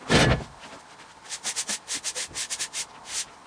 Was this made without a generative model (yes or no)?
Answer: yes